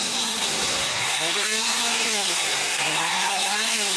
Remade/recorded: remade